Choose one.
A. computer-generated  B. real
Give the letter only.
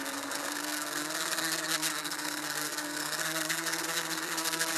A